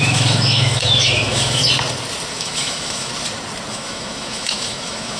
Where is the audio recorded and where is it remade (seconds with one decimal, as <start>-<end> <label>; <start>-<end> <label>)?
0.0-1.6 remade; 1.6-2.3 recorded; 2.3-3.1 remade; 3.1-3.7 recorded; 3.7-5.2 remade